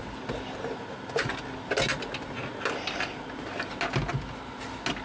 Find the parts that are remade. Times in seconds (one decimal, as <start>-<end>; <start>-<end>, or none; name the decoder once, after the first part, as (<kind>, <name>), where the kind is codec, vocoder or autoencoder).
none